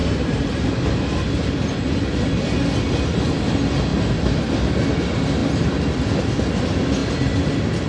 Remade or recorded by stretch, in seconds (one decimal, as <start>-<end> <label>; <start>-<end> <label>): 0.0-7.9 recorded